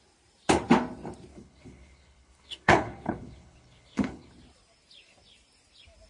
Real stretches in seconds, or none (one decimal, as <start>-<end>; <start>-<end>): 0.0-1.3; 4.3-6.1